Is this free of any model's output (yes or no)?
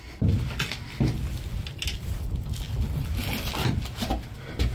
yes